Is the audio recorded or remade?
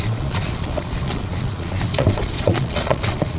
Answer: remade